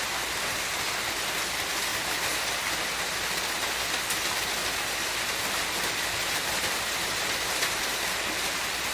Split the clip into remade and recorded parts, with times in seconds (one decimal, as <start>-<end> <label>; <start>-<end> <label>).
0.0-1.9 recorded; 1.9-2.6 remade; 2.6-4.6 recorded; 4.6-7.8 remade; 7.8-8.9 recorded